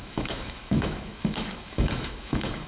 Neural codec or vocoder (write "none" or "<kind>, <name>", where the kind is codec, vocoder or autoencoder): autoencoder, DAC-VAE